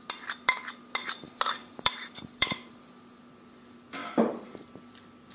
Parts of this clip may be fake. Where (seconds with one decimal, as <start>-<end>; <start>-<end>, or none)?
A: 1.6-2.9; 4.0-5.3